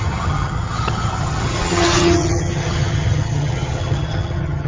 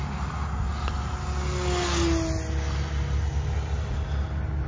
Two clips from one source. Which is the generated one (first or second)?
first